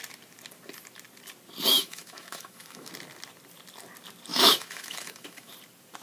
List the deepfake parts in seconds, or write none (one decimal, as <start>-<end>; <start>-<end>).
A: 1.7-2.9; 4.3-5.5